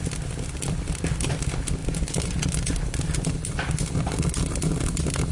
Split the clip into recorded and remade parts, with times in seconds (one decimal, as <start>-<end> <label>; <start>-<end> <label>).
0.0-5.3 recorded